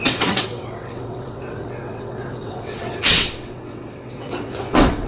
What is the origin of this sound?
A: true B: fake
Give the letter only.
B